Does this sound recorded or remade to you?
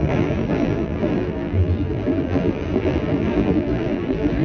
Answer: remade